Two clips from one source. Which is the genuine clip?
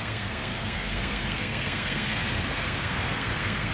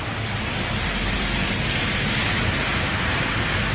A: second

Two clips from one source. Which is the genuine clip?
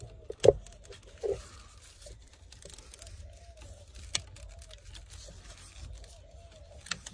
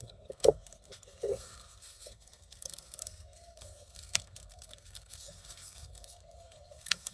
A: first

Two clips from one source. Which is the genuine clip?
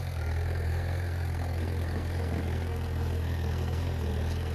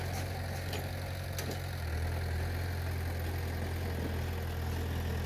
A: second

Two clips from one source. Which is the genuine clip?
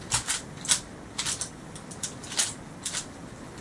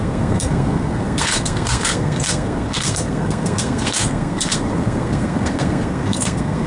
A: first